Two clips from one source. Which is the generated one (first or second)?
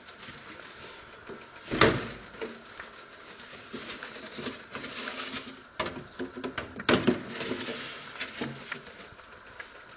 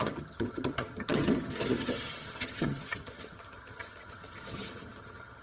second